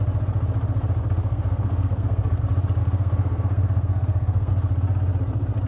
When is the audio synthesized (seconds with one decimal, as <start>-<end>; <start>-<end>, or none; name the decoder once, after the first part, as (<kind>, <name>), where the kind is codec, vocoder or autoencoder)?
1.0-2.4 (codec, SNAC); 2.8-4.5